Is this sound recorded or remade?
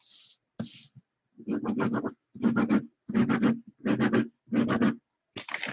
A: recorded